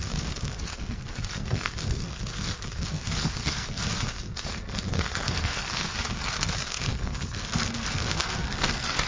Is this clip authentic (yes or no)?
no